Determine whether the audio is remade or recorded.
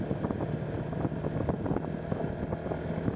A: recorded